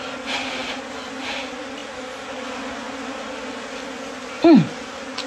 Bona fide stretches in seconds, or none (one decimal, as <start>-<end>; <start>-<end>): 0.0-5.3